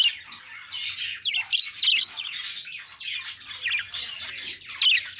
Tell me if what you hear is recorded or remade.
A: recorded